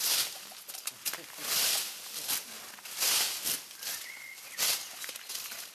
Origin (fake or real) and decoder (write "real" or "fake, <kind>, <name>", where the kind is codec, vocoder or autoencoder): real